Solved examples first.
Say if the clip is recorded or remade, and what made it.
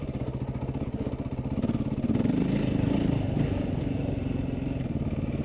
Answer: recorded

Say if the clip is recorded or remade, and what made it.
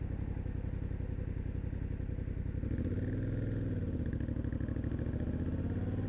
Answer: recorded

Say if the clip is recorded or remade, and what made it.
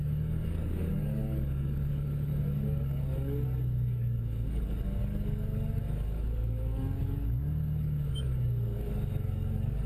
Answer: remade, codec, DAC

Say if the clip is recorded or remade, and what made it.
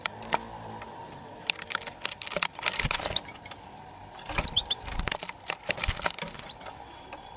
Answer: remade, vocoder, BigVGAN v2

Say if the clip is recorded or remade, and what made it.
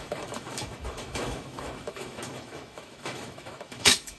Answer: remade, autoencoder, DAC-VAE